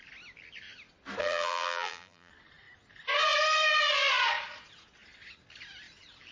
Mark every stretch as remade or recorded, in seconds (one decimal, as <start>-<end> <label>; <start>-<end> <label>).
0.0-1.2 recorded; 1.2-2.3 remade; 2.3-6.3 recorded